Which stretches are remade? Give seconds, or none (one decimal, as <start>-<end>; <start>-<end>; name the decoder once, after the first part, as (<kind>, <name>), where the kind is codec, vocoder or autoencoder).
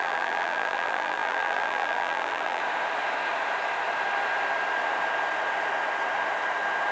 0.0-2.6 (vocoder, BigVGAN v2)